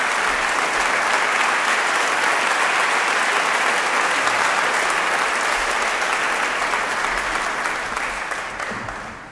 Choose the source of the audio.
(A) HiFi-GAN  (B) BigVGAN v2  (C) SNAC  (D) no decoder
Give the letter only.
D